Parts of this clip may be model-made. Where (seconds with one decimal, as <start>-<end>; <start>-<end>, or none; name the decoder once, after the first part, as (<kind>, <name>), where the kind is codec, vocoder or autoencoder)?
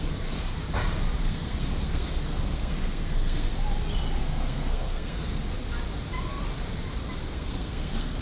0.0-0.6 (codec, SNAC); 1.2-3.5; 4.2-5.5; 7.2-8.2